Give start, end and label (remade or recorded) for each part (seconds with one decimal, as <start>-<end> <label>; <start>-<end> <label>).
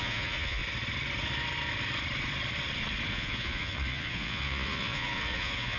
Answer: 0.0-0.6 remade; 0.6-3.1 recorded; 3.1-5.8 remade